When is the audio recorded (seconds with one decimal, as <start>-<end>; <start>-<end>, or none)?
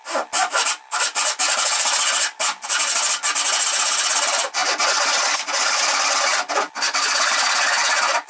0.0-8.3